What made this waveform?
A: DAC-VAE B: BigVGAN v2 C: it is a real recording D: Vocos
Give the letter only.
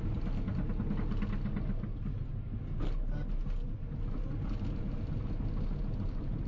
C